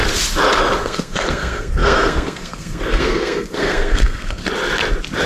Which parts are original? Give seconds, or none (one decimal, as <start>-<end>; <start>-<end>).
0.0-0.8; 4.4-5.3